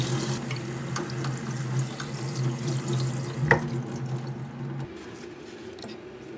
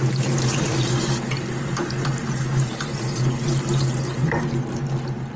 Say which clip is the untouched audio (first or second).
first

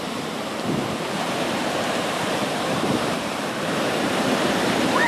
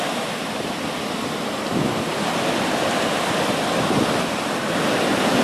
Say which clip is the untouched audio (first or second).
second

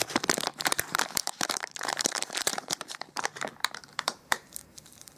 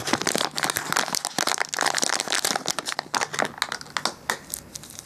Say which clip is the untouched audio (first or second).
second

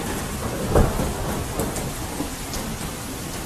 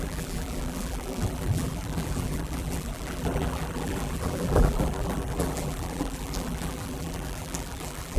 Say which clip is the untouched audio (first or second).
first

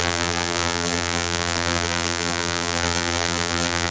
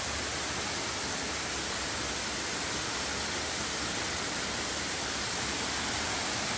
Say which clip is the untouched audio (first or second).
second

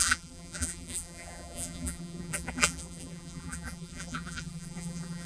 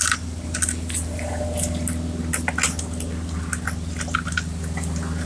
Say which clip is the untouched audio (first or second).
second